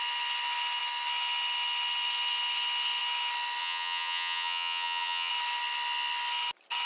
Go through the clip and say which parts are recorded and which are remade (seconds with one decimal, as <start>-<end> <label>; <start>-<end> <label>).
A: 0.0-3.6 recorded; 3.6-5.3 remade; 5.3-6.9 recorded